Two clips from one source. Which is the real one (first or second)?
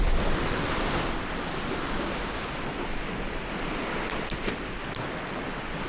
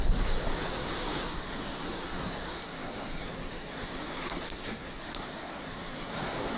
first